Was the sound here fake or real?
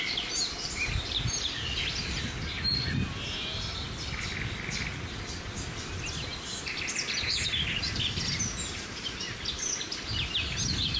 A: real